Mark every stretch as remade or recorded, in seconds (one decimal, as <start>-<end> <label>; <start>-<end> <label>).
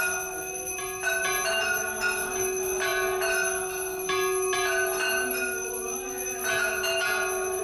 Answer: 0.0-7.6 recorded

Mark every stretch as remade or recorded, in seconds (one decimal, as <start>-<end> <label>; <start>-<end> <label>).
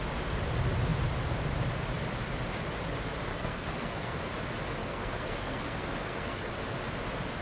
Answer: 0.0-3.3 recorded; 3.3-4.2 remade; 4.2-4.8 recorded; 4.8-6.5 remade; 6.5-7.4 recorded